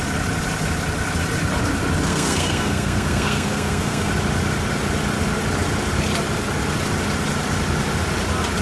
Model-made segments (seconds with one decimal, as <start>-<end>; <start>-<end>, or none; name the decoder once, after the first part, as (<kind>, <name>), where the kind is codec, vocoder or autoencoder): 2.1-4.1 (codec, SNAC)